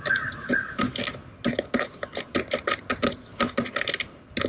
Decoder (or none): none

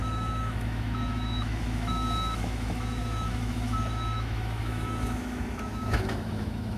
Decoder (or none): autoencoder, DAC-VAE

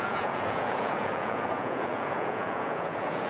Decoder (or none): vocoder, Vocos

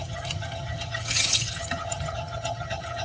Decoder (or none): vocoder, HiFi-GAN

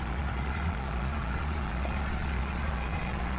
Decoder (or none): vocoder, Vocos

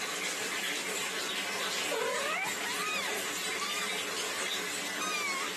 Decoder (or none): none